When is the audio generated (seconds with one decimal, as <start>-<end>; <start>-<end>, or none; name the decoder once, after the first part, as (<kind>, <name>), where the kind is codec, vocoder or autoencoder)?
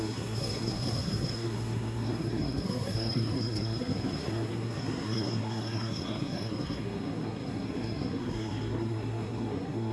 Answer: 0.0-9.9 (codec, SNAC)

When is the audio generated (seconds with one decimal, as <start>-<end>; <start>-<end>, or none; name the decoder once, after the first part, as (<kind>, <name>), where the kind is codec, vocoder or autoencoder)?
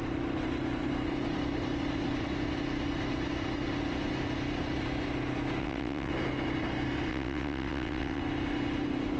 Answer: 5.6-6.1 (vocoder, WaveNeXt); 7.1-8.2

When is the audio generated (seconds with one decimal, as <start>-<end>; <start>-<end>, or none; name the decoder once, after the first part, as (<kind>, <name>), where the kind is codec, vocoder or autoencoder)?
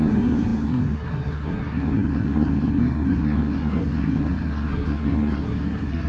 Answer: 0.0-6.1 (codec, SNAC)